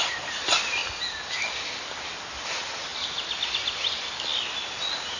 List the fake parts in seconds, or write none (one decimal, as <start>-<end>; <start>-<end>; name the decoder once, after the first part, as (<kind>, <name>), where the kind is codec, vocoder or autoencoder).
none